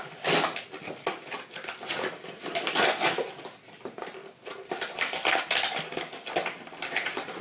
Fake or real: real